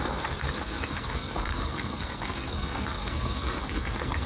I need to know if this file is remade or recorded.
remade